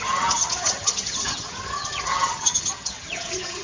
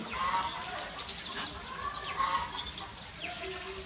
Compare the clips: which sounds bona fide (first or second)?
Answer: second